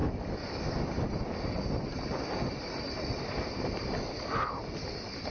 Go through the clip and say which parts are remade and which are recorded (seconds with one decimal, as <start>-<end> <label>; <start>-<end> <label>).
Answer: 0.0-5.3 recorded